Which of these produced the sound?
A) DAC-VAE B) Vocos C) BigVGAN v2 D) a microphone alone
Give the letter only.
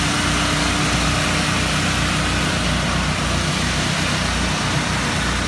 D